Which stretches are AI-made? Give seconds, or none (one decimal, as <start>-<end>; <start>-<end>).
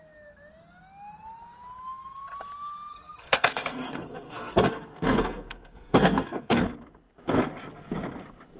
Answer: 2.9-6.6